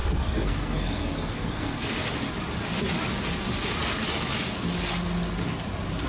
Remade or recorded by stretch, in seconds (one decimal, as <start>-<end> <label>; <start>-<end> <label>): 0.0-1.9 remade; 1.9-6.1 recorded